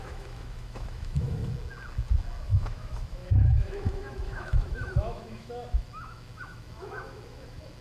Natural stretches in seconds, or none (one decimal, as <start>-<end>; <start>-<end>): 1.4-2.4